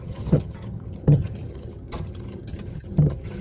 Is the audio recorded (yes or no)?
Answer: no